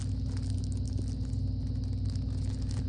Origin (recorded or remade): recorded